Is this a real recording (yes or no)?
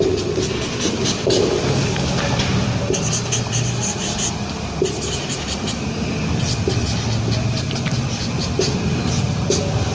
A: yes